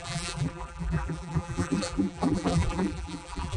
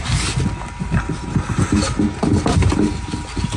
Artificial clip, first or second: first